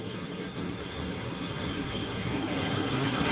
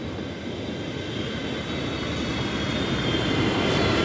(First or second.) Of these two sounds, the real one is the second